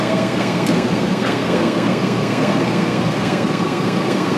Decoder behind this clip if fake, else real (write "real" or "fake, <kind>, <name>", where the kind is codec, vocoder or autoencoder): fake, codec, SNAC